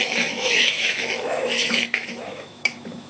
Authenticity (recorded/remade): remade